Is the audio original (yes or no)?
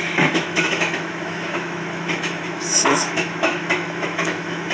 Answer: no